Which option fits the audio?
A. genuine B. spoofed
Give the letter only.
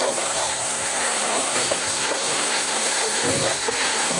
B